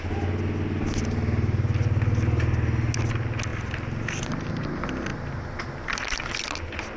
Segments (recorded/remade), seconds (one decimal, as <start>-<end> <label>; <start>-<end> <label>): 0.0-7.0 recorded